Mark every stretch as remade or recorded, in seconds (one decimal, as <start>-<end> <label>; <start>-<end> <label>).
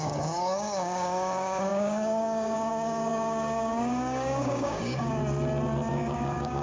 0.0-5.2 remade; 5.2-5.9 recorded; 5.9-6.6 remade